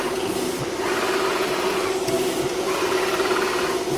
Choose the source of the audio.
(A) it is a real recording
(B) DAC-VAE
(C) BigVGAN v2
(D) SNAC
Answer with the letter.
A